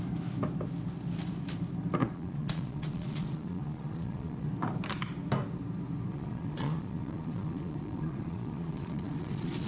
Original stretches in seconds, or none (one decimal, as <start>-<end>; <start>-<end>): 0.0-2.0; 4.5-6.1